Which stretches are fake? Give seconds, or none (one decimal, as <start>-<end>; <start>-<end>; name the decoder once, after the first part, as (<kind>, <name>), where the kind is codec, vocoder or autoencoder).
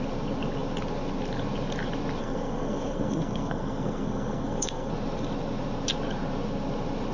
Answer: 2.2-4.9 (codec, SNAC)